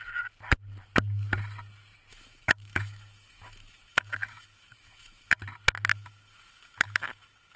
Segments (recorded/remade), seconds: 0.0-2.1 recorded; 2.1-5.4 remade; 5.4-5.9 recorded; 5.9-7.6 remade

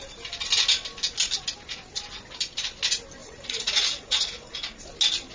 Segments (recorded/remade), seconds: 0.0-3.2 recorded; 3.2-4.5 remade; 4.5-5.3 recorded

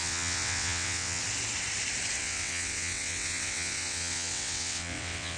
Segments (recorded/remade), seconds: 0.0-1.2 remade; 1.2-2.2 recorded; 2.2-5.4 remade

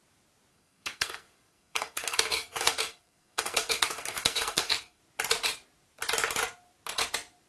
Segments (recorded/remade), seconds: 0.0-0.5 recorded; 0.5-5.0 remade; 5.0-7.5 recorded

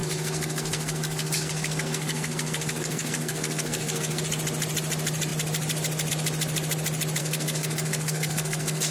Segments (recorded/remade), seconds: 0.0-4.2 remade; 4.2-7.2 recorded; 7.2-8.9 remade